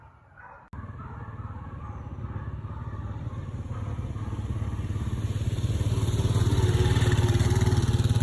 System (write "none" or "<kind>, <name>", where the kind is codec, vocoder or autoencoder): none